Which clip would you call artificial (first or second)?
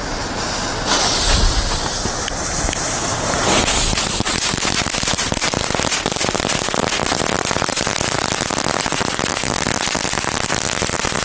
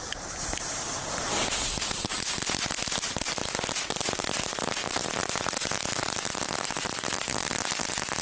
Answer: second